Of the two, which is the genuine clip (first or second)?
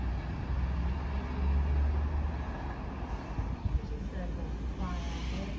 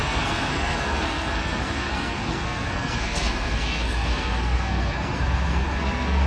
first